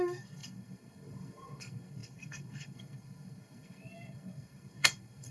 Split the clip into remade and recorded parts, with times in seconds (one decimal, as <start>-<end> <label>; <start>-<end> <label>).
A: 0.0-5.3 remade